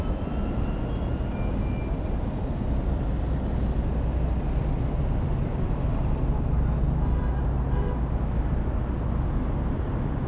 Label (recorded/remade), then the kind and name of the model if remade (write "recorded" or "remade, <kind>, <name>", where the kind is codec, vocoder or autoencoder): recorded